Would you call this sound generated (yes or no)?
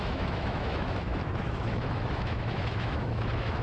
yes